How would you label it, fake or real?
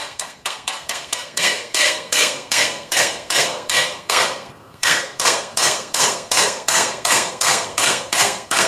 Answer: fake